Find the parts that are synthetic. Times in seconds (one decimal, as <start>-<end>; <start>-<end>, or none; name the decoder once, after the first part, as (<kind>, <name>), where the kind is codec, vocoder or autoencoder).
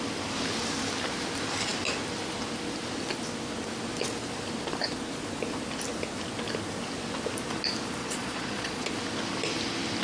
8.0-8.9 (vocoder, Vocos)